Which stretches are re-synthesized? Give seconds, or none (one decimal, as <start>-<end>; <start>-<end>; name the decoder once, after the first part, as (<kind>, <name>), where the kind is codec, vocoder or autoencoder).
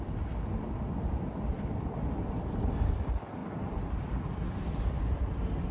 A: none